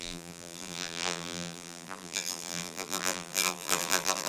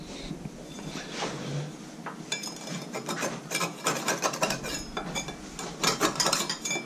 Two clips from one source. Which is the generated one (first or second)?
first